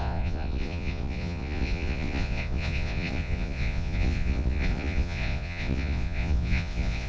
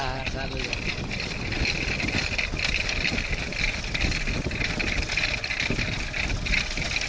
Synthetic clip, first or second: first